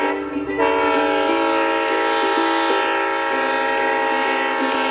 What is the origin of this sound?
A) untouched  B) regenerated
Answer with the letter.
A